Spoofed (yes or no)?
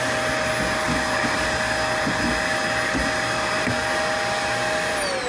no